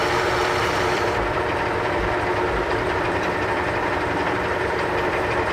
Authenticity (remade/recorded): remade